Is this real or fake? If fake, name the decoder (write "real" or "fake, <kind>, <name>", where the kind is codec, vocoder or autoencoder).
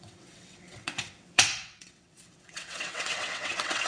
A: fake, vocoder, WaveNeXt